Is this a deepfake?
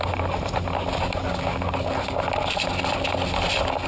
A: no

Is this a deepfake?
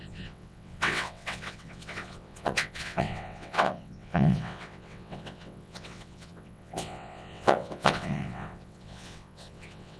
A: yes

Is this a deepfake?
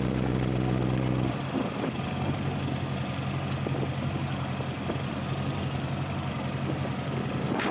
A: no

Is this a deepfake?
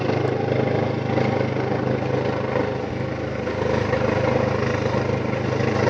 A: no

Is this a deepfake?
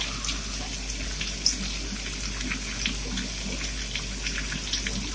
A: no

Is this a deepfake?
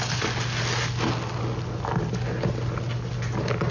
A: no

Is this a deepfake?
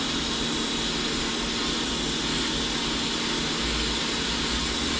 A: no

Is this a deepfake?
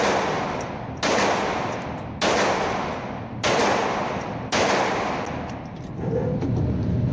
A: no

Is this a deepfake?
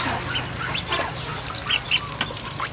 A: no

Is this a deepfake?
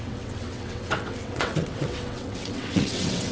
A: yes